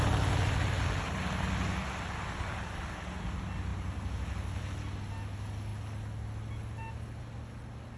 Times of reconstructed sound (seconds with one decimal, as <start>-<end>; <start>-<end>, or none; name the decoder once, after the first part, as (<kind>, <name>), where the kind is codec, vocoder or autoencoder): none